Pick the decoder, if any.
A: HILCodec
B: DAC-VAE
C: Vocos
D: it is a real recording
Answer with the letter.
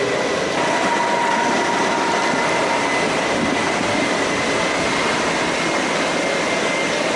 D